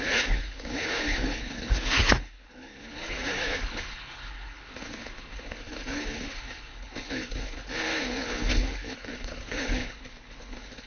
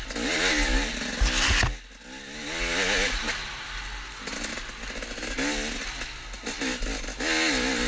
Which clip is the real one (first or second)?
second